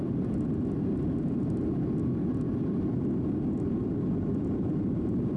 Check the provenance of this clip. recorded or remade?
recorded